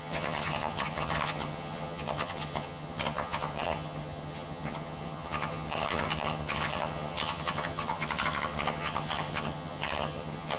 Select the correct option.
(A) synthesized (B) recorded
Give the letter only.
A